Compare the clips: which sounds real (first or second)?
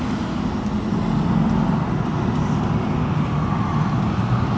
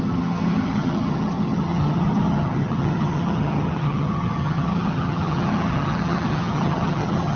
first